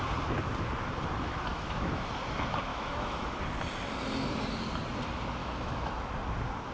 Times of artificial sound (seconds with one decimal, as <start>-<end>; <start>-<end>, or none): 1.5-2.1; 2.7-3.4; 5.4-6.1